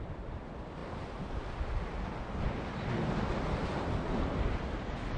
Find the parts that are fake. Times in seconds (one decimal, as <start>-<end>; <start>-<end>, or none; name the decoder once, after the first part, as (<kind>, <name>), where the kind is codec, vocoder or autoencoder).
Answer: none

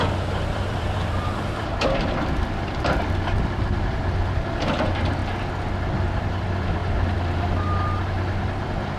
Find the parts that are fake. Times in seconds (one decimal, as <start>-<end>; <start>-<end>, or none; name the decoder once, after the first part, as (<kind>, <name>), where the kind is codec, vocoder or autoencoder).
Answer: 0.0-5.2 (vocoder, BigVGAN v2); 6.2-9.0